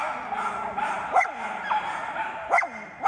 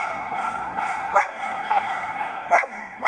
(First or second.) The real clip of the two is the first